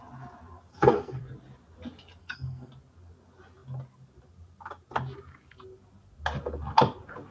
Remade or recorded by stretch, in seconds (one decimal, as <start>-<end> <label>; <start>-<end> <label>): 0.0-0.7 recorded; 0.7-1.2 remade; 1.2-2.2 recorded; 2.2-2.7 remade; 2.7-7.3 recorded